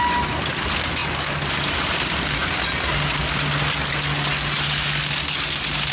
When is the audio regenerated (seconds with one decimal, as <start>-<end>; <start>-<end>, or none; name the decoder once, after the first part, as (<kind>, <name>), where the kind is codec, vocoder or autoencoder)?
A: none